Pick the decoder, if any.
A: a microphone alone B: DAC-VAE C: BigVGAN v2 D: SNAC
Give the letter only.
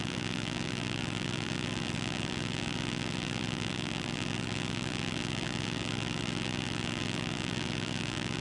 C